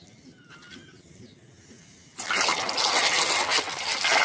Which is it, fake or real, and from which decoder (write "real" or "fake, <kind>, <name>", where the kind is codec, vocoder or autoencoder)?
real